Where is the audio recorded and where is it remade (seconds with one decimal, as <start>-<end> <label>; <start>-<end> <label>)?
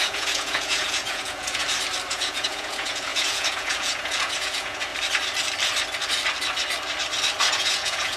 0.0-1.6 remade; 1.6-2.1 recorded; 2.1-4.9 remade; 4.9-7.5 recorded; 7.5-8.2 remade